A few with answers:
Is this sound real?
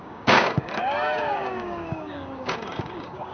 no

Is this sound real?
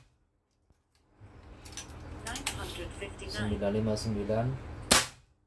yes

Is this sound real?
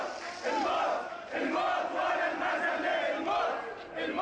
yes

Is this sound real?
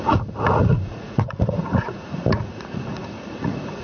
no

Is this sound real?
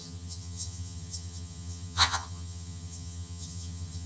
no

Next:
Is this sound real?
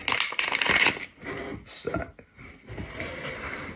yes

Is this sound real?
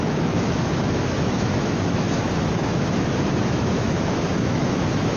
no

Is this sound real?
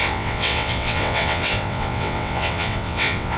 no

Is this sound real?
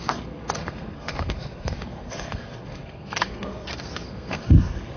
no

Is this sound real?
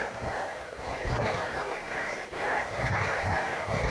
no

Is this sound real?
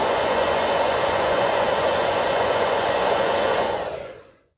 no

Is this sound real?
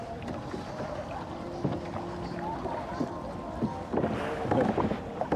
yes